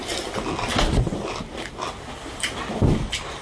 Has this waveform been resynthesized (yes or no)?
no